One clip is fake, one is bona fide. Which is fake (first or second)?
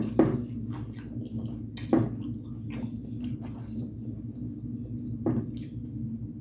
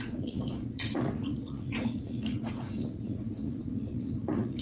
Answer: second